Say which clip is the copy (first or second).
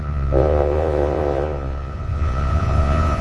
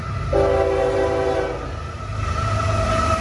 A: first